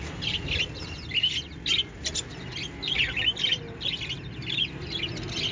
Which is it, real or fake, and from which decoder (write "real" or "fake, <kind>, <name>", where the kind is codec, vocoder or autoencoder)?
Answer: real